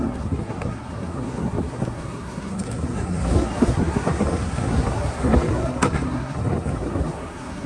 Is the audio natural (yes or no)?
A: no